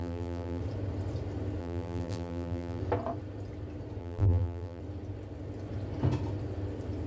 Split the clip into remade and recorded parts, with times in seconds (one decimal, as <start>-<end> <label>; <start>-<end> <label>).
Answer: 0.0-0.6 remade; 0.6-1.6 recorded; 1.6-2.8 remade; 2.8-4.0 recorded; 4.0-4.8 remade; 4.8-7.1 recorded